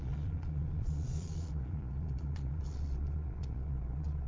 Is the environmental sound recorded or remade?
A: remade